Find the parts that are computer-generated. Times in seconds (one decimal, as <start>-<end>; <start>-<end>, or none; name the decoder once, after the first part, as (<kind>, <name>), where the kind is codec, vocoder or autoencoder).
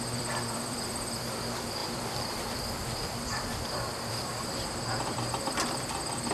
0.0-6.3 (vocoder, BigVGAN v2)